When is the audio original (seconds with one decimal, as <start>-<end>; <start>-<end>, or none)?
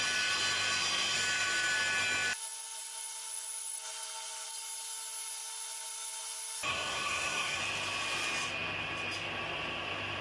0.0-6.7; 7.6-10.2